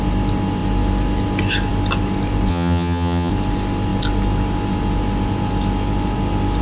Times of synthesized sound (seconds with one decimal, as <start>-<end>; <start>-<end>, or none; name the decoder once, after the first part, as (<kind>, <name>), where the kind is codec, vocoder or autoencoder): 2.5-3.3 (vocoder, HiFi-GAN)